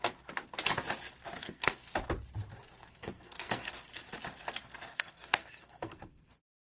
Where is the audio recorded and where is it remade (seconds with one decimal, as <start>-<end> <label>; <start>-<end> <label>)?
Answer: 0.0-1.4 recorded; 1.4-1.9 remade; 1.9-2.8 recorded; 2.8-3.7 remade; 3.7-4.9 recorded; 4.9-6.3 remade; 6.3-6.7 recorded